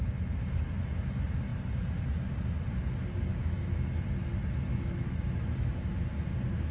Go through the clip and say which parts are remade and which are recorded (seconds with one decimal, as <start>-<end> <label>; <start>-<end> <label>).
0.0-3.3 recorded; 3.3-3.9 remade; 3.9-4.7 recorded; 4.7-6.0 remade; 6.0-6.7 recorded